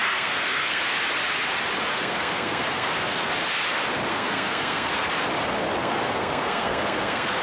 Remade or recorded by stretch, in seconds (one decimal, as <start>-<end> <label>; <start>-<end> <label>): 0.0-0.8 remade; 0.8-1.9 recorded; 1.9-3.3 remade; 3.3-4.1 recorded; 4.1-4.9 remade; 4.9-5.8 recorded; 5.8-7.4 remade